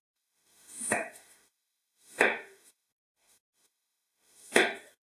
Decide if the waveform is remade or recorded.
remade